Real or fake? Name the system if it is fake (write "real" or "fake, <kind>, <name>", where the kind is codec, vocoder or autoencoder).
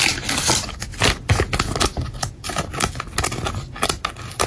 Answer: real